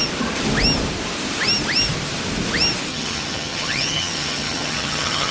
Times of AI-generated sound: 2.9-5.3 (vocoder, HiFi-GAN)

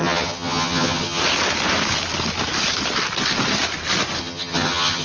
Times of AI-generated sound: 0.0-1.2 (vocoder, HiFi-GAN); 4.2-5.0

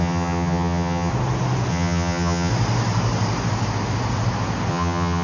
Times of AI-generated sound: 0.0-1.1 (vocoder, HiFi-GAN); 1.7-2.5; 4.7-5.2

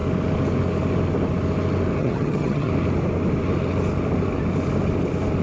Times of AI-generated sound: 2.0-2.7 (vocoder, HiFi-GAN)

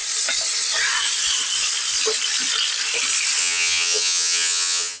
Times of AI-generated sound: 3.4-5.0 (vocoder, HiFi-GAN)